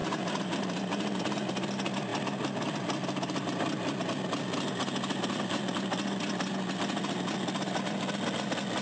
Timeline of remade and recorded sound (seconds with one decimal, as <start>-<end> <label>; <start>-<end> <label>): 0.0-8.8 recorded